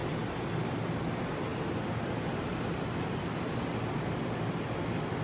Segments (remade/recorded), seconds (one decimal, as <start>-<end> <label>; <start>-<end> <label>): 0.0-5.2 recorded